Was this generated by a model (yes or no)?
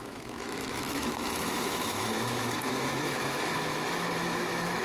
yes